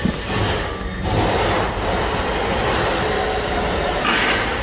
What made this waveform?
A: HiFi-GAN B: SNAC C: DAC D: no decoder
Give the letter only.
D